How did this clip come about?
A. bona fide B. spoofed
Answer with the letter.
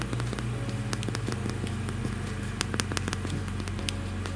A